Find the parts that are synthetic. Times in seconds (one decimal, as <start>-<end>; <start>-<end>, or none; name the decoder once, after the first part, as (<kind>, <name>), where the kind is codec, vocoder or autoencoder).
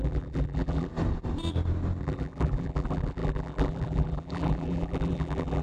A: 0.0-0.9 (vocoder, BigVGAN v2); 2.0-5.6